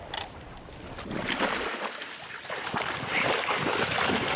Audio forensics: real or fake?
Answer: real